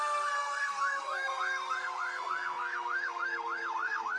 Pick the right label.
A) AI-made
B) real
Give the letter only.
A